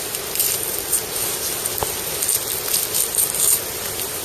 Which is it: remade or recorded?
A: remade